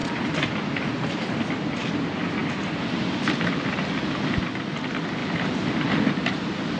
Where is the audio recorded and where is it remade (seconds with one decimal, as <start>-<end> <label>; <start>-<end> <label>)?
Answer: 0.0-1.3 remade; 1.3-5.2 recorded; 5.2-6.0 remade; 6.0-6.8 recorded